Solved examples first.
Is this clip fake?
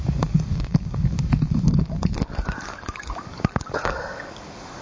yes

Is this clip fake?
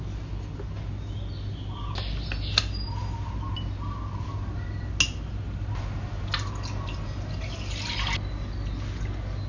no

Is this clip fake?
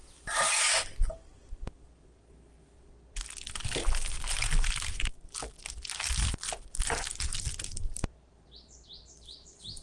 yes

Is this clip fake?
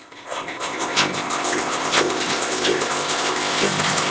yes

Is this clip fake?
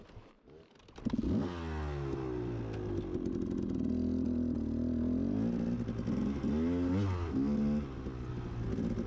no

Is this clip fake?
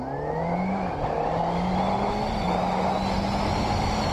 no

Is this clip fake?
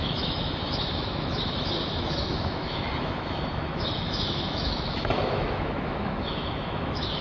yes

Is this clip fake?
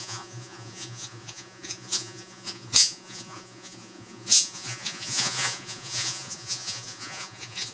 yes